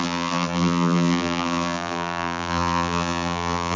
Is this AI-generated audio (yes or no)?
yes